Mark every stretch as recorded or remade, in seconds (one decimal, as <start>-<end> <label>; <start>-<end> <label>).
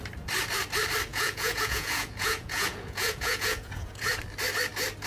0.0-1.1 recorded; 1.1-4.2 remade; 4.2-5.1 recorded